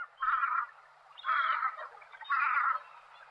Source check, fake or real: real